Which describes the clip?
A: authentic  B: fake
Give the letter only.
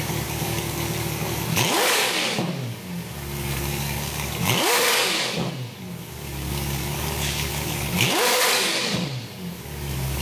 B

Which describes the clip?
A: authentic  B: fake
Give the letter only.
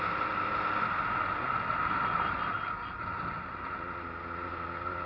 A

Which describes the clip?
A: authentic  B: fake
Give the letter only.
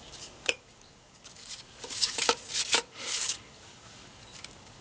B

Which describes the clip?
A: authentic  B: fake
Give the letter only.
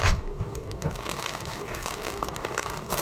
B